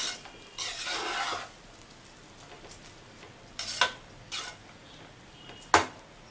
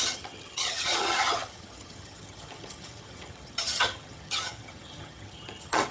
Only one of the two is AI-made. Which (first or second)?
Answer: second